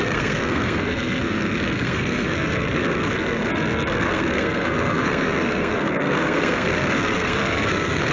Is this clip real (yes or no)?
no